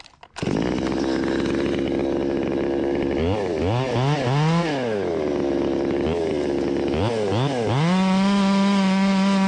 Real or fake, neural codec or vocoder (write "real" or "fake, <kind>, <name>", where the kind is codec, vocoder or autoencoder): real